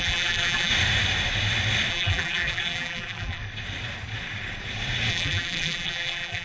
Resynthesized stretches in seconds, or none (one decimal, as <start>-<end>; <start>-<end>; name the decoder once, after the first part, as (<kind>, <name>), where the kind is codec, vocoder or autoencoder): 0.0-0.7 (vocoder, BigVGAN v2); 1.9-3.4; 5.1-6.4